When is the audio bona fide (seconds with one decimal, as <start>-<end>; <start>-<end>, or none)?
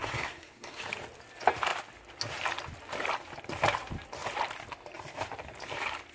0.8-6.1